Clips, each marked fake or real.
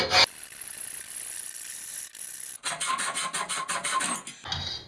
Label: real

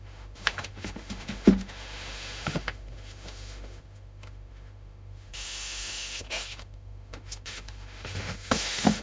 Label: fake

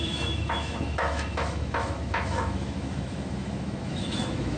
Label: fake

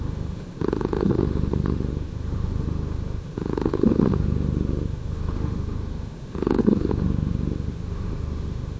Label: fake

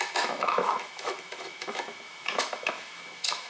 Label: fake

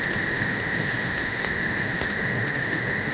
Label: fake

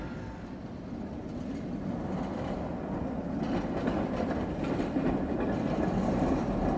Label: real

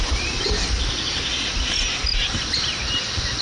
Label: real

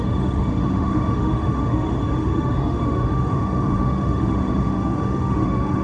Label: fake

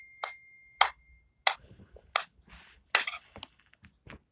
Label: real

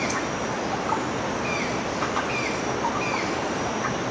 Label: real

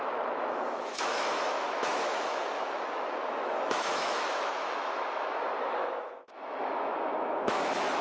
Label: fake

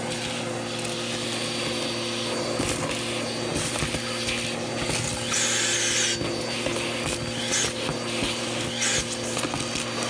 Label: real